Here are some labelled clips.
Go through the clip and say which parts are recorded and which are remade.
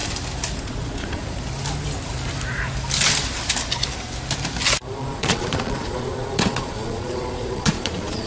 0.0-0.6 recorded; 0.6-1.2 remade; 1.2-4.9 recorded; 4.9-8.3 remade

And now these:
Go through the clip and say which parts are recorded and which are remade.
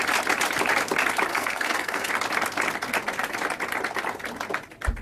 0.0-1.3 recorded; 1.3-2.1 remade; 2.1-5.0 recorded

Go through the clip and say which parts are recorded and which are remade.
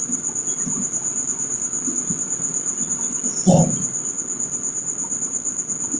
0.0-6.0 recorded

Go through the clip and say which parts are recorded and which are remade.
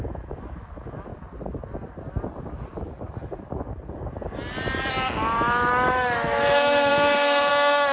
0.0-1.1 remade; 1.1-5.7 recorded; 5.7-7.9 remade